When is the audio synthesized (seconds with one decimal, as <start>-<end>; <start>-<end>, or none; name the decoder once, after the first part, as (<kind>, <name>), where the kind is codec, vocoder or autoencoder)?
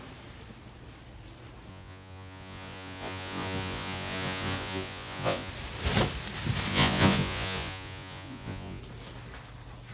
1.7-5.5 (vocoder, Vocos); 6.7-8.8